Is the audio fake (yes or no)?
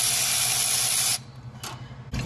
no